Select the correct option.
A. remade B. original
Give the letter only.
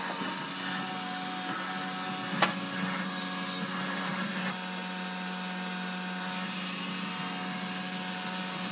B